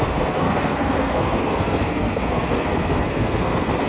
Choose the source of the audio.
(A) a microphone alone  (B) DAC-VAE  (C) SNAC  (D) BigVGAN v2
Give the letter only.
C